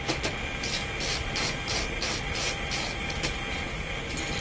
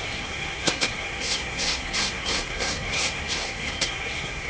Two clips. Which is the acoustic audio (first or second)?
first